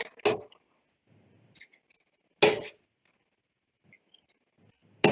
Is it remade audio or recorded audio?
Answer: recorded